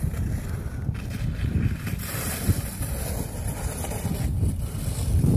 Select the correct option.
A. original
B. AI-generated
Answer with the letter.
B